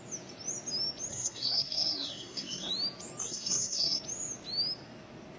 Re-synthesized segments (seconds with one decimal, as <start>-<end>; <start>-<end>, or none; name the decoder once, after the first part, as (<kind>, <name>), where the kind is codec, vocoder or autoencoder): 1.1-2.7 (codec, SNAC); 3.2-4.0